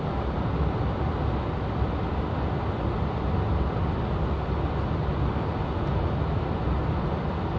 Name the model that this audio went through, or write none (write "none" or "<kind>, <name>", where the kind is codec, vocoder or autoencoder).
none